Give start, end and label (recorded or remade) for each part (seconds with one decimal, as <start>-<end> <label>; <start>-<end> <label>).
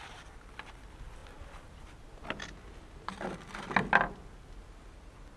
0.0-5.4 recorded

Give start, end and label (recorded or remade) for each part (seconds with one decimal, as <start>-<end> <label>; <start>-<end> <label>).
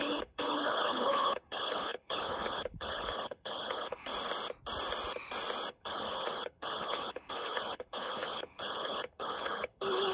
0.0-4.1 remade; 4.1-5.7 recorded; 5.7-10.1 remade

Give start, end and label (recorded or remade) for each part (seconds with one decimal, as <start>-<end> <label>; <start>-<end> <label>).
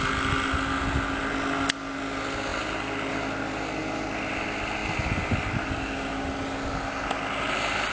0.0-7.9 recorded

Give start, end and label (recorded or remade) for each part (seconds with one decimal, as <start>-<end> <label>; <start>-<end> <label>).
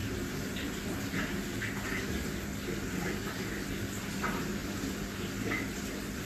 0.0-6.2 recorded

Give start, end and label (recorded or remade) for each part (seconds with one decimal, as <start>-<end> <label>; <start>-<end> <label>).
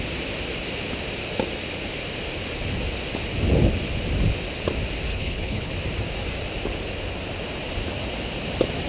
0.0-5.1 recorded; 5.1-5.7 remade; 5.7-8.9 recorded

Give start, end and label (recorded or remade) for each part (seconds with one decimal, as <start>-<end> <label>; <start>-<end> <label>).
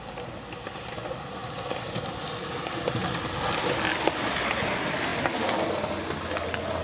0.0-6.8 recorded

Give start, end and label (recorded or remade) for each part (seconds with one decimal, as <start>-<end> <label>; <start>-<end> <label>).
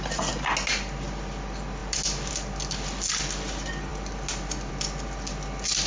0.0-5.9 recorded